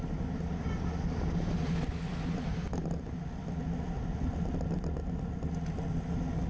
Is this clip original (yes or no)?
yes